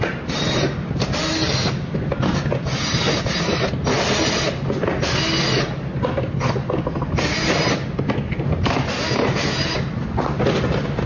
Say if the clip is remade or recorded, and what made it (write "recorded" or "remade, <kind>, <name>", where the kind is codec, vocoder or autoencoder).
recorded